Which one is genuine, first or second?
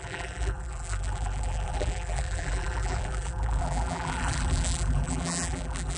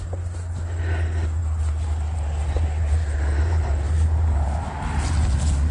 second